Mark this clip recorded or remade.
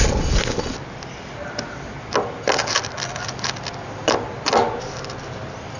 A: recorded